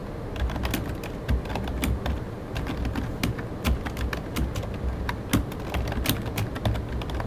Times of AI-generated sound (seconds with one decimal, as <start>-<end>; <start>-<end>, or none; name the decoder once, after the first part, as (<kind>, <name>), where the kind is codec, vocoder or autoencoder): none